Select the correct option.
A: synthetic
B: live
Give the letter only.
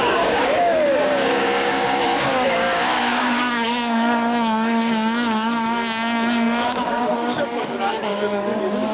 A